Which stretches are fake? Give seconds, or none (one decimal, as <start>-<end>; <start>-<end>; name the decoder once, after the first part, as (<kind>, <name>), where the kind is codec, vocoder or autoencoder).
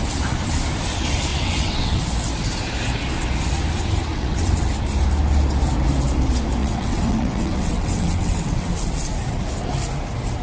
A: 1.3-2.0 (vocoder, WaveNeXt); 4.1-4.7; 6.6-8.7